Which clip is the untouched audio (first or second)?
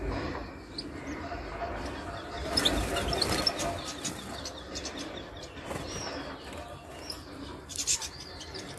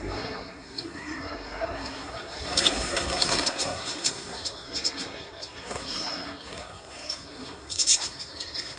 first